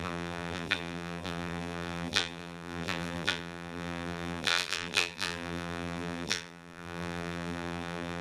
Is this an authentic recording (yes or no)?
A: no